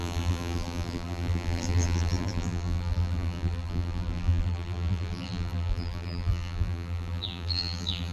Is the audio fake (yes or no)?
yes